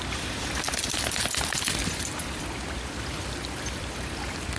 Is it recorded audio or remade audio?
remade